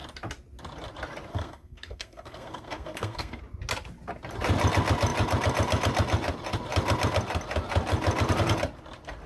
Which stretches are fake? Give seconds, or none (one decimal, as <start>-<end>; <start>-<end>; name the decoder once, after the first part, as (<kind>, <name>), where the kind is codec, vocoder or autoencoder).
1.3-3.4 (codec, SNAC)